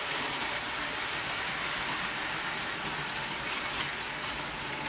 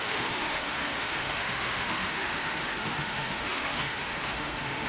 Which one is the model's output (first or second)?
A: second